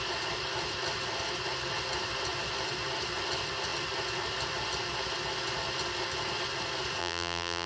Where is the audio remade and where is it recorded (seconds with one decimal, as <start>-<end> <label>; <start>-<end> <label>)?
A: 0.0-7.0 recorded; 7.0-7.7 remade